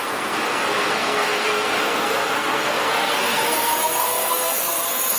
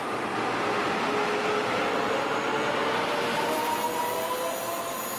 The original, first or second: second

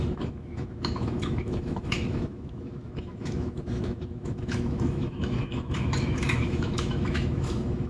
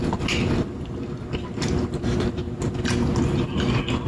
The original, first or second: second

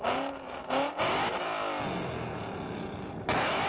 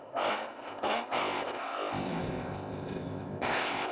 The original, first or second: first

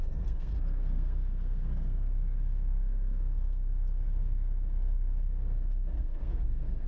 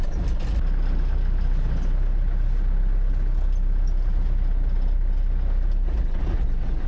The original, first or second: second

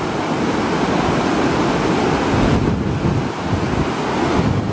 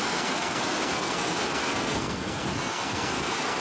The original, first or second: first